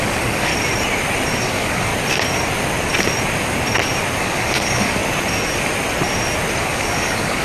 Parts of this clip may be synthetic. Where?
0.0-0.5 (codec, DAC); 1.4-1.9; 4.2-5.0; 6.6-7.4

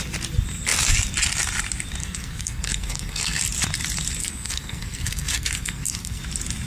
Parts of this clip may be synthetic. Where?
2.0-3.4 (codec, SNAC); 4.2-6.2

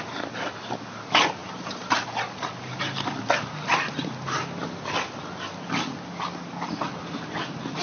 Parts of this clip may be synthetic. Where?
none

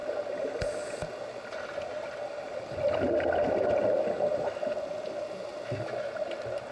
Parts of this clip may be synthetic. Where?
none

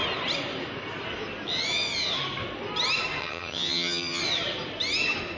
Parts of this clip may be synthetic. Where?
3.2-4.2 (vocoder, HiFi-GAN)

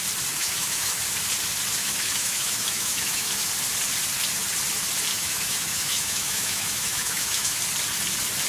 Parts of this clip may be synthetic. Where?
0.4-1.0 (autoencoder, DAC-VAE); 1.8-3.5; 5.1-7.6

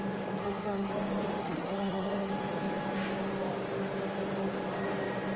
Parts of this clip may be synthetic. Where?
0.4-0.9 (codec, SNAC); 1.4-2.3